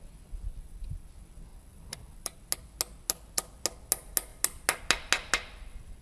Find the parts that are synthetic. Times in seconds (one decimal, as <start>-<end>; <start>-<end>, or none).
0.5-1.1; 1.5-2.4